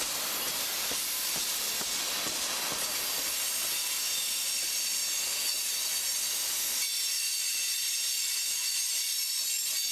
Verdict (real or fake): real